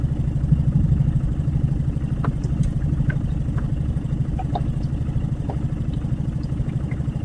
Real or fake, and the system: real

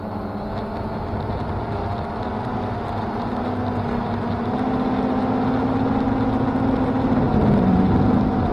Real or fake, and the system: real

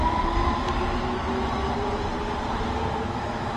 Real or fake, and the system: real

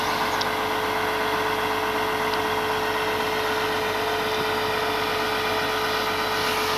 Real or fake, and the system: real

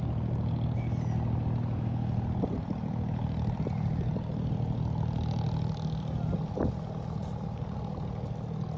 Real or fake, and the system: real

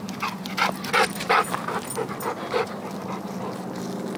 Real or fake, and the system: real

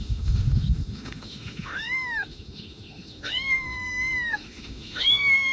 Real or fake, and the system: fake, autoencoder, DAC-VAE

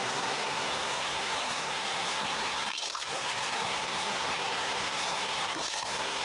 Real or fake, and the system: fake, codec, SNAC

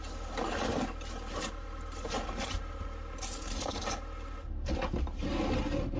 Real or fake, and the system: real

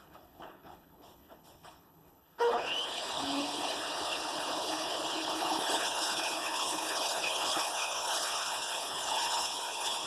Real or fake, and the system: fake, codec, HILCodec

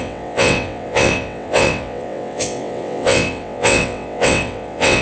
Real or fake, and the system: fake, vocoder, WaveNeXt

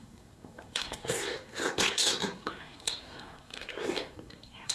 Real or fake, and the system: fake, codec, SNAC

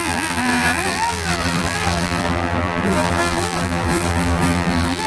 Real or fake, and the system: fake, vocoder, BigVGAN v2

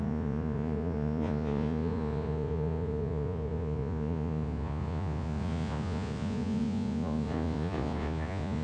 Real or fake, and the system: fake, vocoder, Vocos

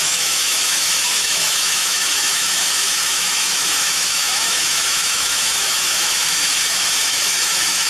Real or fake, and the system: fake, autoencoder, DAC-VAE